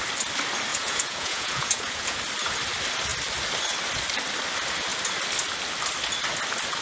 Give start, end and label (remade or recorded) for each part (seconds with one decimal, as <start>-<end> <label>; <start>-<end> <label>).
0.0-0.7 recorded; 0.7-2.2 remade; 2.2-6.8 recorded